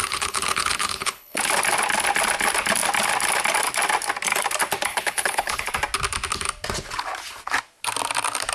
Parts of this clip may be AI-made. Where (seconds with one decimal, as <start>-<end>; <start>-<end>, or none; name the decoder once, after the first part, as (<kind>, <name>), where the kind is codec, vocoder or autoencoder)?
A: 0.0-1.4 (codec, HILCodec); 4.9-5.7